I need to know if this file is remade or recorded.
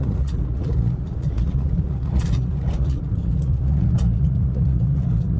remade